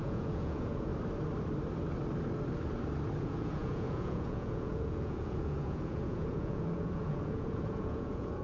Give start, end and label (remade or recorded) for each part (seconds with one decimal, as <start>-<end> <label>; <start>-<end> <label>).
0.0-0.9 remade; 0.9-3.2 recorded; 3.2-8.4 remade